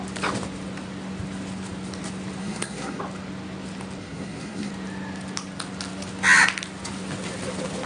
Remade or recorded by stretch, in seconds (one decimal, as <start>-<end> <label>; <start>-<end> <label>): 0.0-2.4 recorded; 2.4-3.0 remade; 3.0-4.0 recorded; 4.0-4.7 remade; 4.7-7.9 recorded